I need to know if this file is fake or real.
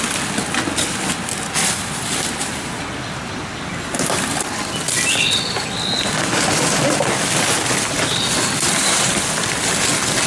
real